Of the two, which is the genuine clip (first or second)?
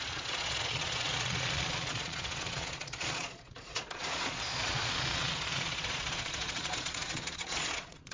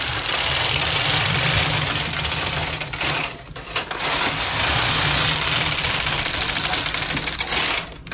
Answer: second